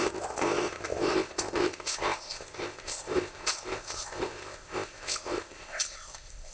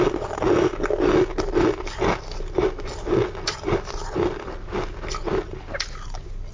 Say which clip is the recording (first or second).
second